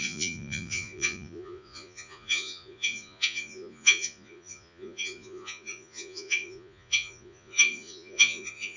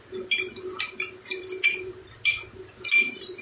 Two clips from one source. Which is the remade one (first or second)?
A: first